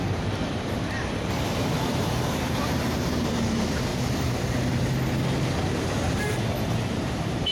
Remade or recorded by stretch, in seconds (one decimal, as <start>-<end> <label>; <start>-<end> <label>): 0.0-3.9 remade; 3.9-6.2 recorded; 6.2-7.5 remade